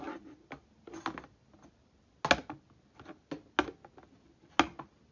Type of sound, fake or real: real